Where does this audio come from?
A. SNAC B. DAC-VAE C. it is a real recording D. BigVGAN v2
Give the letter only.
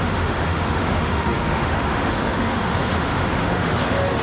B